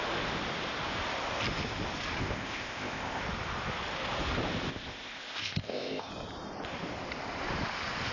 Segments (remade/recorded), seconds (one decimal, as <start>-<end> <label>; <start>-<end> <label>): 0.0-2.2 recorded; 2.2-3.2 remade; 3.2-4.7 recorded; 4.7-6.1 remade; 6.1-8.1 recorded